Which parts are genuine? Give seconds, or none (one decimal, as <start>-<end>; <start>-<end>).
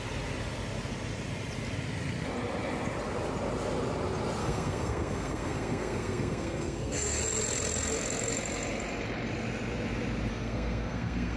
0.0-4.4; 7.2-10.3